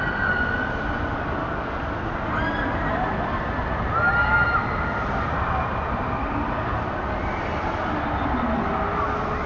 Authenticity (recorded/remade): recorded